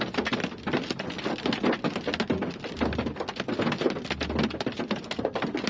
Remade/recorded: recorded